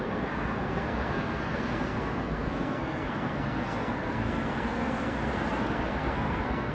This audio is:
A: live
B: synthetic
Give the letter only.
B